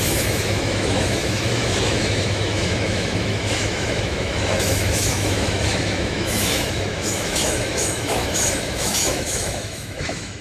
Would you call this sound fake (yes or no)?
yes